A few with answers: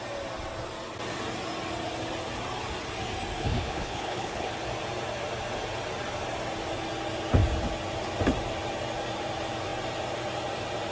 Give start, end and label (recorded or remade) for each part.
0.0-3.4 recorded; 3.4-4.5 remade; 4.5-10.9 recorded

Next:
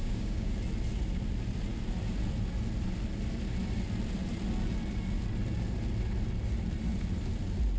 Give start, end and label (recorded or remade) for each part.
0.0-0.5 remade; 0.5-7.8 recorded